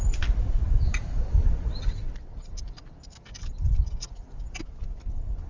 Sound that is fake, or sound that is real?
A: real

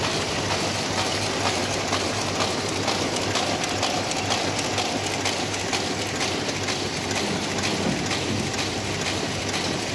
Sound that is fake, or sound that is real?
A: real